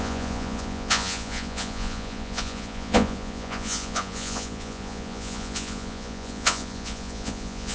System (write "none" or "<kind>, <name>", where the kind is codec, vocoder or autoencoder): vocoder, Vocos